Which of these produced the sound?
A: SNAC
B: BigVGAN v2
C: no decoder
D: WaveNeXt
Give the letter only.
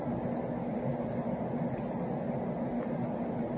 C